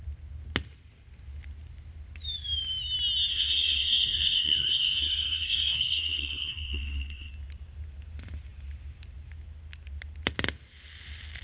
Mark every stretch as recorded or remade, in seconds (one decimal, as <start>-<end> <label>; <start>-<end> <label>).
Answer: 0.0-3.3 recorded; 3.3-7.3 remade; 7.3-11.4 recorded